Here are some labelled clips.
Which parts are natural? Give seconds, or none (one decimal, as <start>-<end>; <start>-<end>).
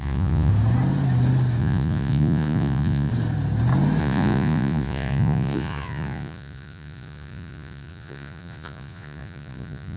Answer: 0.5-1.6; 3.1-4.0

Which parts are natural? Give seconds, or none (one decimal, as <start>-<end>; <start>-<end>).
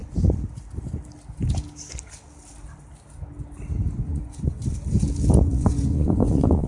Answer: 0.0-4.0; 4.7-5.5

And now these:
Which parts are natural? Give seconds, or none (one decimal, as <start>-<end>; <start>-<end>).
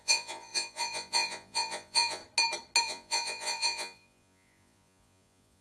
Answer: 2.2-2.8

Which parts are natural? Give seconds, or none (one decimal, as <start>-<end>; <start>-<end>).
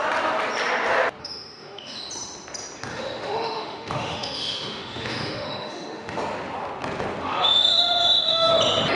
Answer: 0.0-1.2; 2.0-2.9; 6.2-7.2; 8.5-9.0